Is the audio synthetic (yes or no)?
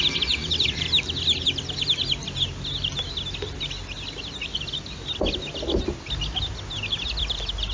no